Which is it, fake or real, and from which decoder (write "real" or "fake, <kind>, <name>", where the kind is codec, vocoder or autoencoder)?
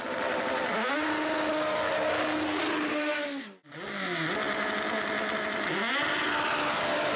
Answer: real